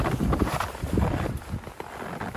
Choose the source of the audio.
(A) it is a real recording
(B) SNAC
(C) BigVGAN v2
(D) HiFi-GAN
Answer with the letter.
C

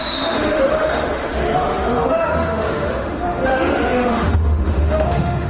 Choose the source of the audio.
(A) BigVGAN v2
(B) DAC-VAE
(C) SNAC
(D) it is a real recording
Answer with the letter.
B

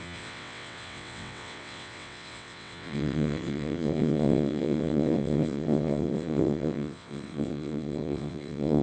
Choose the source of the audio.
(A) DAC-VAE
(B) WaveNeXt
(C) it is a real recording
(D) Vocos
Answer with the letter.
B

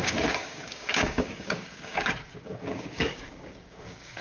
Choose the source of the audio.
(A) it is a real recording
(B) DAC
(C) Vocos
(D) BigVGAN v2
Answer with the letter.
B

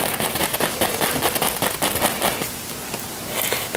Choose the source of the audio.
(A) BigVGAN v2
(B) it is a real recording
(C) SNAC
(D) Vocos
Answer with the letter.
B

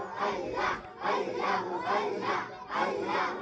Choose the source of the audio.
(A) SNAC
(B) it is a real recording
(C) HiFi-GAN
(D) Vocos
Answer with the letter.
B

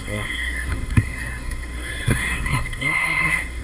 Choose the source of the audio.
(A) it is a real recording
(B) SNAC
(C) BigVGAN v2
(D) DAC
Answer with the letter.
B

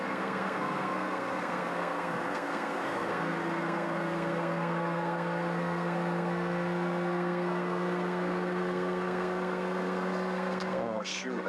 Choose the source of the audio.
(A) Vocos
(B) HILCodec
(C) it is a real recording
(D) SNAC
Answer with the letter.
D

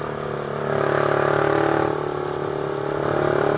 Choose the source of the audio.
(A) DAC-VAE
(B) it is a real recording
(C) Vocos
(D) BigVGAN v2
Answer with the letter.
B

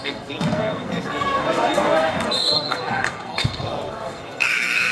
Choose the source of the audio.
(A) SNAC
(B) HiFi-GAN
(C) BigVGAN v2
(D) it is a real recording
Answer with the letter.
A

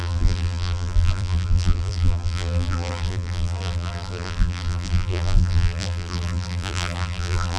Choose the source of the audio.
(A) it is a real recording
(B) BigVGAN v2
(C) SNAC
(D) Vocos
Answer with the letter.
B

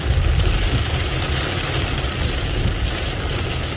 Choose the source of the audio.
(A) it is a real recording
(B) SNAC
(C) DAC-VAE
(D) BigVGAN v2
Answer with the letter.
A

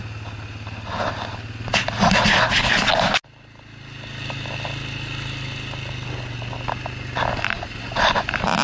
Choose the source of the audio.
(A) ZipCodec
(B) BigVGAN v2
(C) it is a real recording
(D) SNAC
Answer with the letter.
C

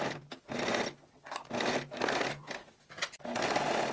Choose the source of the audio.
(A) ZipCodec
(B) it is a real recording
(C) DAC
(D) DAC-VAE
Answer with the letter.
B